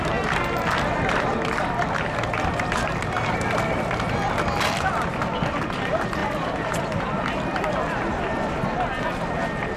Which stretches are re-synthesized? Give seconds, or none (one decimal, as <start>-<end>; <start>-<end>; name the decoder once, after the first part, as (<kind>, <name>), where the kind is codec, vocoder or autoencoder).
6.2-7.0 (vocoder, BigVGAN v2)